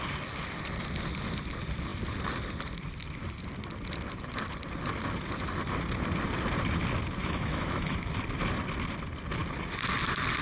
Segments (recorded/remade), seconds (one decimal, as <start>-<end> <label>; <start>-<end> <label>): 0.0-7.2 recorded; 7.2-8.1 remade; 8.1-10.4 recorded